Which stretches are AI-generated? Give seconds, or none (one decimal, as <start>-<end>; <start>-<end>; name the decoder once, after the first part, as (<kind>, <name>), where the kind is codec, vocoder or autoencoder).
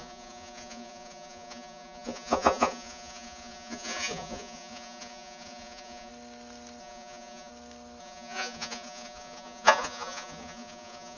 0.0-6.1 (vocoder, Vocos); 6.8-7.5; 8.0-11.2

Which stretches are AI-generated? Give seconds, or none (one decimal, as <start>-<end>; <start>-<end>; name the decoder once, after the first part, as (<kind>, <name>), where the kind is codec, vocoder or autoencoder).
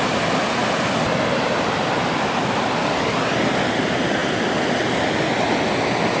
none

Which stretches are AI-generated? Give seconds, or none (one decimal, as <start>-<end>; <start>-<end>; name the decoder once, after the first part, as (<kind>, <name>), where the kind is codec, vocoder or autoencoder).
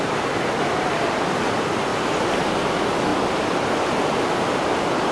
none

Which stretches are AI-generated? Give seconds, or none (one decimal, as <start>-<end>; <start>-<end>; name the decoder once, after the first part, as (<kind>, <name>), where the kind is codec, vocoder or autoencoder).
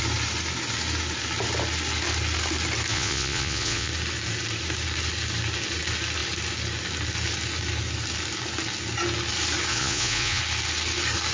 2.9-3.9 (vocoder, Vocos); 9.7-10.4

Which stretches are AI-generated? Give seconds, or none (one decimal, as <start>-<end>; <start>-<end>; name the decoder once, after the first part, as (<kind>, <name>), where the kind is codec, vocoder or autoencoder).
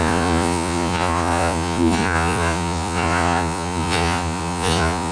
0.0-5.1 (vocoder, Vocos)